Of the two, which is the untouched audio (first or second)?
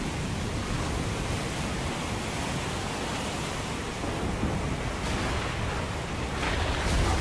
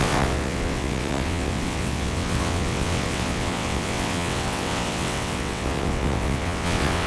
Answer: first